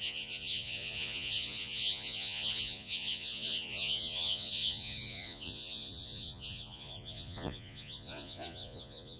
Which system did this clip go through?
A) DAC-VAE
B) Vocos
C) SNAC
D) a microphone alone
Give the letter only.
B